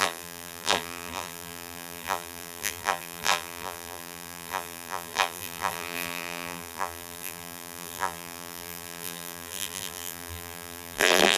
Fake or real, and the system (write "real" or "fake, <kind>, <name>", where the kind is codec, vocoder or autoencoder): fake, vocoder, BigVGAN v2